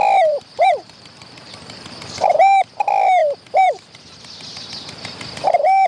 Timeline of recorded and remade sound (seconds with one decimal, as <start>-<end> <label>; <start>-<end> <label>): 0.0-2.3 remade; 2.3-3.2 recorded; 3.2-4.1 remade; 4.1-5.9 recorded